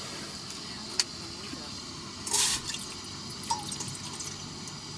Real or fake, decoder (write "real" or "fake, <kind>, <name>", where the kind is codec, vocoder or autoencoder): real